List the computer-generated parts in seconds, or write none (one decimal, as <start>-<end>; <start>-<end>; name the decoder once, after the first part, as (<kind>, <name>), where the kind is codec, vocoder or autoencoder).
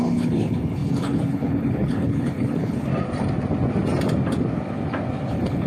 0.0-2.9 (codec, HILCodec); 5.3-5.7